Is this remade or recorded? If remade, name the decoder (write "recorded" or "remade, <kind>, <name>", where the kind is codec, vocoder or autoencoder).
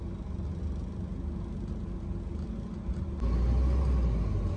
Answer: recorded